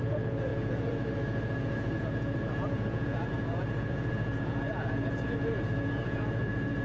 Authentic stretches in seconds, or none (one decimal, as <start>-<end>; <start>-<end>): none